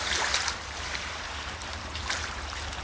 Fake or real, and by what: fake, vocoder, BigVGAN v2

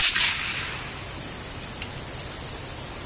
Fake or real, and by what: real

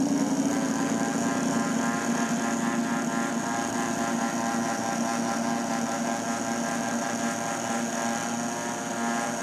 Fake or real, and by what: real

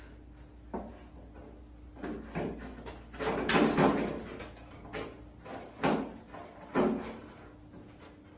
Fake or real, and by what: real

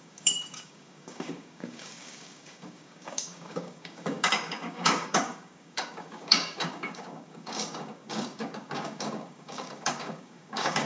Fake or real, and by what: fake, codec, DAC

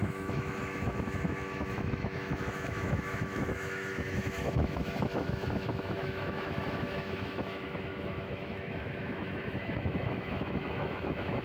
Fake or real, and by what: fake, autoencoder, DAC-VAE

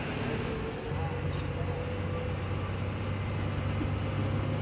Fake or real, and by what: real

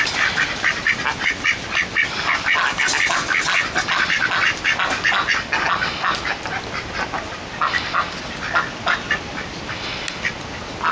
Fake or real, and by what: real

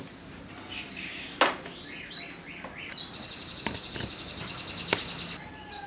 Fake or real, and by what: real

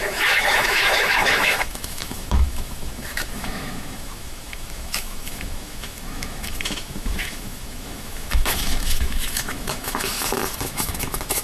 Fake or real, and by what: fake, autoencoder, DAC-VAE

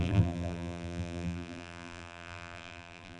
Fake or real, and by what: fake, vocoder, BigVGAN v2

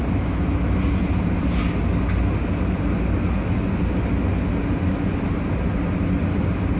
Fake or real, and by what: real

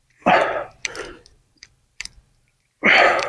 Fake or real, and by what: fake, vocoder, BigVGAN v2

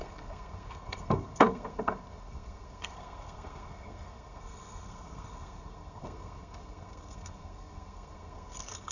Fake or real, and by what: fake, codec, SNAC